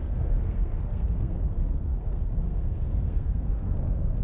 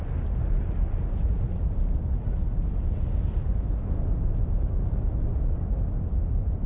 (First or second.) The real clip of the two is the second